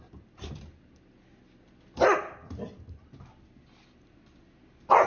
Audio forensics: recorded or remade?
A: recorded